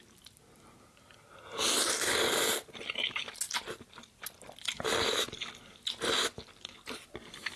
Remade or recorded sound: recorded